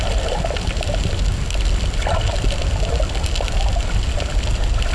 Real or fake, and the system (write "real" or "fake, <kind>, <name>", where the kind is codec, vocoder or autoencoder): real